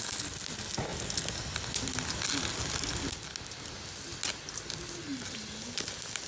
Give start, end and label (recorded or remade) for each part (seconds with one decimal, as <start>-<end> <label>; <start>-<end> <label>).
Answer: 0.0-6.3 recorded